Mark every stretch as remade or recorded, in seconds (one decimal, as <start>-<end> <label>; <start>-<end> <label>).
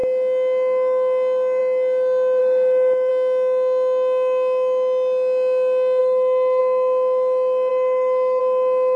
0.0-2.4 recorded; 2.4-3.1 remade; 3.1-6.0 recorded; 6.0-6.6 remade; 6.6-7.7 recorded; 7.7-8.4 remade; 8.4-9.0 recorded